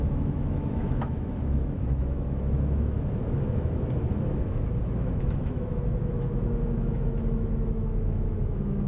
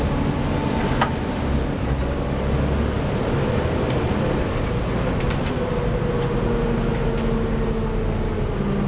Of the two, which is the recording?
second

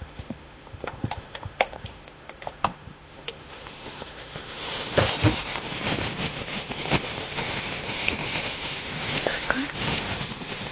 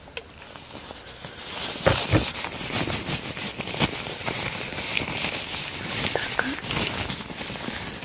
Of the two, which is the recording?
second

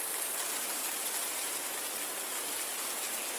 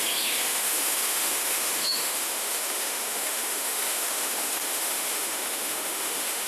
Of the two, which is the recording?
first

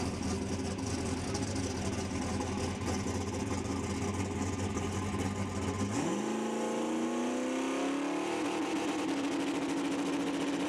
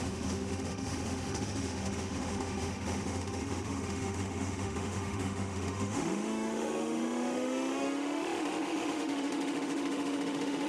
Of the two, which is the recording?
first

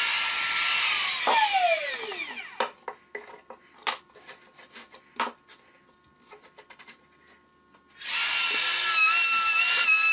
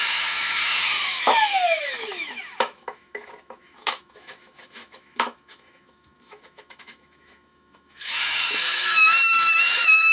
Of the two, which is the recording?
first